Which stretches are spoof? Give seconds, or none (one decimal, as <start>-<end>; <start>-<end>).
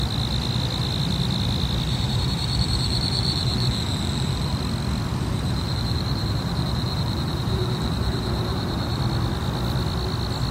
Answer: 1.9-4.6; 5.1-9.0